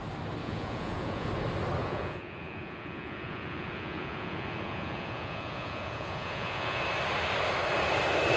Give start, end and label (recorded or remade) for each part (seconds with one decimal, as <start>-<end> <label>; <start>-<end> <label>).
0.0-0.4 recorded; 0.4-1.3 remade; 1.3-1.8 recorded; 1.8-6.8 remade; 6.8-8.4 recorded